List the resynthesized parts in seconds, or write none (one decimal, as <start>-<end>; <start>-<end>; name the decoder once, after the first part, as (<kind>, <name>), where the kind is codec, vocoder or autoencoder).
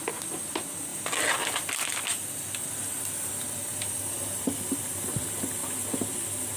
none